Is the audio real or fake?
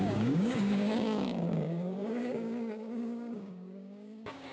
fake